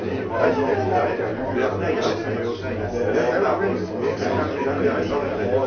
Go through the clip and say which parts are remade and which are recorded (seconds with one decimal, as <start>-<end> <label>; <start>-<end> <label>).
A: 0.0-5.7 recorded